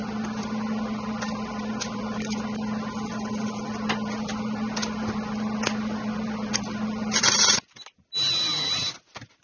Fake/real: real